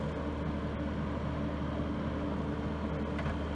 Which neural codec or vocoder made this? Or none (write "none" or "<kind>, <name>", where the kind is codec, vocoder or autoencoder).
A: none